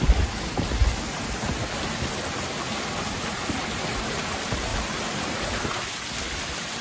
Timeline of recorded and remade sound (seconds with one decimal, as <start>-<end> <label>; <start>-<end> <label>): 0.0-6.8 recorded